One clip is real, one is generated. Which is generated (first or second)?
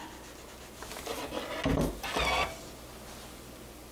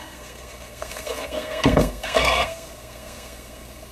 second